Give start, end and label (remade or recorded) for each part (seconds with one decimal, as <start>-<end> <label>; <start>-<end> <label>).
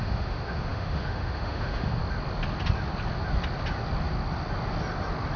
0.0-2.0 remade; 2.0-5.4 recorded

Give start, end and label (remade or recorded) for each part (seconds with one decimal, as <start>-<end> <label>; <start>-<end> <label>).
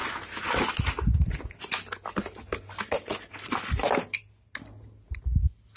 0.0-5.8 recorded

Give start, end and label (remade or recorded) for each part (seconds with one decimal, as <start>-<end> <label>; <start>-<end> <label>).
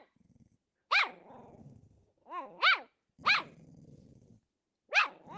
0.0-1.6 recorded; 1.6-2.7 remade; 2.7-5.4 recorded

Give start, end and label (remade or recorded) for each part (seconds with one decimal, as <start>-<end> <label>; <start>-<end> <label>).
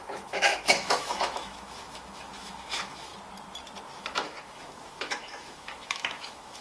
0.0-3.1 remade; 3.1-4.0 recorded; 4.0-6.6 remade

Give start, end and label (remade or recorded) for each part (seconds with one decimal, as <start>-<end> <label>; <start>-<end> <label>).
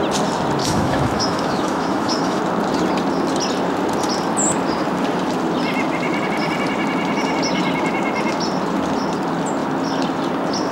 0.0-0.6 recorded; 0.6-2.4 remade; 2.4-10.7 recorded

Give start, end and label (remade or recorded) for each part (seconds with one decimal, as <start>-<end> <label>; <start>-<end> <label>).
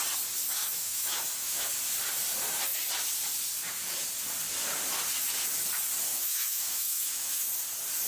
0.0-0.6 recorded; 0.6-1.7 remade; 1.7-6.1 recorded; 6.1-7.5 remade; 7.5-8.1 recorded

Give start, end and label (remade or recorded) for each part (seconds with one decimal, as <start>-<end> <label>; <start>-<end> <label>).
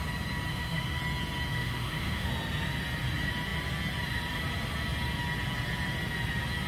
0.0-0.5 recorded; 0.5-1.0 remade; 1.0-1.5 recorded; 1.5-2.3 remade; 2.3-6.7 recorded